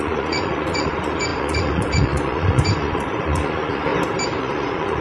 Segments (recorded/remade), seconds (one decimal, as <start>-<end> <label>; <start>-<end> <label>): 0.0-3.9 remade; 3.9-4.4 recorded; 4.4-5.0 remade